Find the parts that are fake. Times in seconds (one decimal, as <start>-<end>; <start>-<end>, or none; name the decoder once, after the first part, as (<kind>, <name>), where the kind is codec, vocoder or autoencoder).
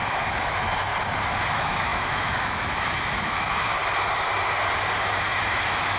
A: 0.0-0.9 (autoencoder, DAC-VAE); 1.5-3.8; 5.0-6.0